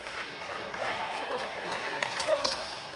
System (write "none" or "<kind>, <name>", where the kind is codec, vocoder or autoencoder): codec, SNAC